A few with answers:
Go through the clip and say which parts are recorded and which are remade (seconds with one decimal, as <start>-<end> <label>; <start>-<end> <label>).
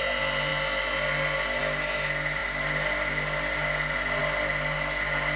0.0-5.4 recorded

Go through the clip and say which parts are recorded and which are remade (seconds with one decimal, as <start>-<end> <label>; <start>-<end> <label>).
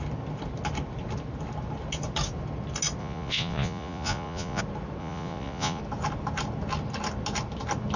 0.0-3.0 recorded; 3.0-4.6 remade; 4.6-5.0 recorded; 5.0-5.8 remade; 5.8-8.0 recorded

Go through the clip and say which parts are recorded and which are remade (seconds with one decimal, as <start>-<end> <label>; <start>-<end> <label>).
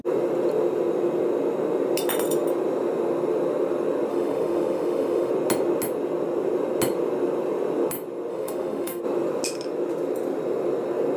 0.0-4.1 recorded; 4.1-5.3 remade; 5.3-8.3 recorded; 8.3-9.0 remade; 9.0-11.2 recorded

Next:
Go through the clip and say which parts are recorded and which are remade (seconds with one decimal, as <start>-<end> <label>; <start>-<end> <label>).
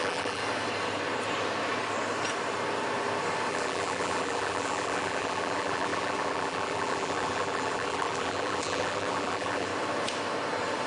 0.0-0.4 remade; 0.4-3.5 recorded; 3.5-9.7 remade; 9.7-10.9 recorded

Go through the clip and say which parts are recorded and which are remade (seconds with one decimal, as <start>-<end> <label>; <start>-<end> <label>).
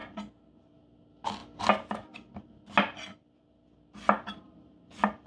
0.0-5.3 recorded